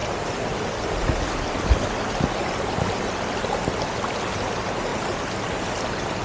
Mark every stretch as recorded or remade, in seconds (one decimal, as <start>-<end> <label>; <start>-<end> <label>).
0.0-6.2 recorded

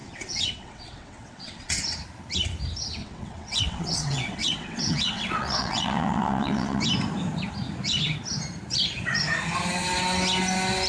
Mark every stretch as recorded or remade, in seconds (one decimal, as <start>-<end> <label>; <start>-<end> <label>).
0.0-1.8 remade; 1.8-3.0 recorded; 3.0-6.8 remade; 6.8-10.9 recorded

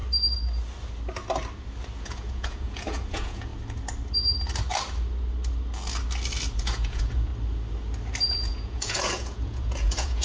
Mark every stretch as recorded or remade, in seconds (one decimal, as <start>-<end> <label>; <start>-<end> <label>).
0.0-2.0 recorded; 2.0-3.5 remade; 3.5-6.6 recorded; 6.6-7.3 remade; 7.3-8.3 recorded; 8.3-10.2 remade

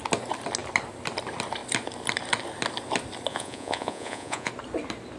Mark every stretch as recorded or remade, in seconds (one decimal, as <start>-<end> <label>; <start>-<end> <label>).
0.0-3.3 recorded; 3.3-4.5 remade; 4.5-5.2 recorded

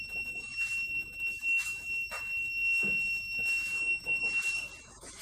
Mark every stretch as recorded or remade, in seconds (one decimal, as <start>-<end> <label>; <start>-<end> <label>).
0.0-4.2 remade; 4.2-4.8 recorded; 4.8-5.2 remade

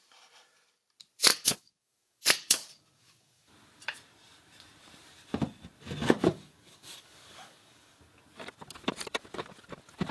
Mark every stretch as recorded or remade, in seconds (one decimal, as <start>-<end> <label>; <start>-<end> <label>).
0.0-1.3 recorded; 1.3-3.5 remade; 3.5-6.3 recorded; 6.3-8.0 remade; 8.0-10.1 recorded

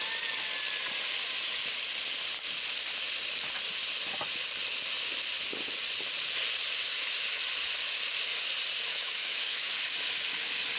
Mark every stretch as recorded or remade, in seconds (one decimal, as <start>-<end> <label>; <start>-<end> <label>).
0.0-8.9 recorded; 8.9-9.7 remade; 9.7-10.8 recorded

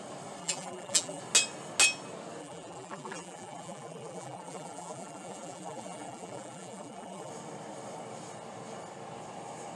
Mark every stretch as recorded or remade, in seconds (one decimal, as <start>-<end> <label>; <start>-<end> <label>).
0.0-0.4 recorded; 0.4-1.2 remade; 1.2-2.4 recorded; 2.4-7.3 remade; 7.3-9.8 recorded